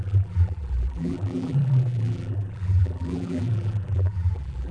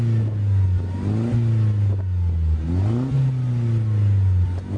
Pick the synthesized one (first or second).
first